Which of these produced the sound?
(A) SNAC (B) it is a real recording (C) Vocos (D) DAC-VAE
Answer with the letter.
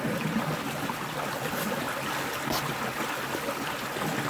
B